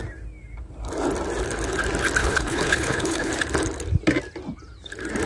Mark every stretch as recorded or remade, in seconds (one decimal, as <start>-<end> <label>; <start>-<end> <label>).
0.0-2.2 recorded; 2.2-3.3 remade; 3.3-5.3 recorded